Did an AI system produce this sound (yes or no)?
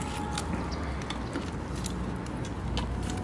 no